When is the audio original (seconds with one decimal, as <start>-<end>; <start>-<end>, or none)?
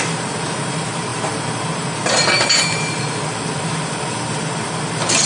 none